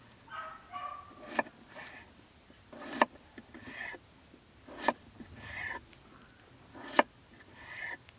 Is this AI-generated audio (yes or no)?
no